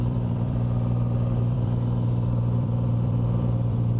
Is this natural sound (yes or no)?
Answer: no